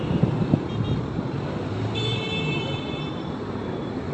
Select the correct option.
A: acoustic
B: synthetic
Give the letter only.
B